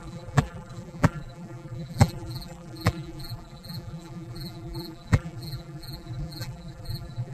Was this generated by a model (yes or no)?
yes